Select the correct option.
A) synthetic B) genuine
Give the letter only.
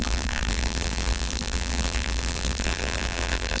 A